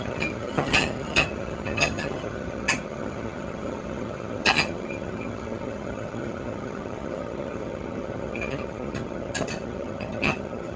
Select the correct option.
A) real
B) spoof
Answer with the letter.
B